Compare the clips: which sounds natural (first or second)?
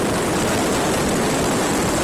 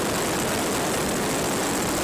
second